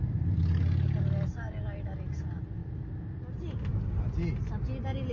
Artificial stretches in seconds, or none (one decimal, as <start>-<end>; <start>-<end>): none